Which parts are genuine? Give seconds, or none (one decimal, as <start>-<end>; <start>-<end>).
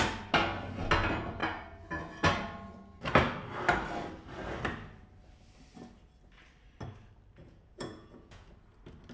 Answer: 0.0-7.4; 8.5-9.1